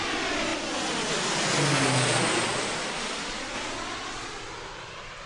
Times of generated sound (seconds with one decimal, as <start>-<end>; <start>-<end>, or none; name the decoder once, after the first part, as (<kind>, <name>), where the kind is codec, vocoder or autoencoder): none